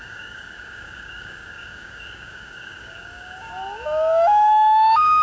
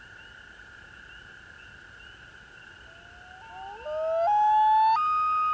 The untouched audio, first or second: second